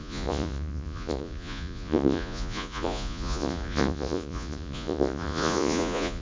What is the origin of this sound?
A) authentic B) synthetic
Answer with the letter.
B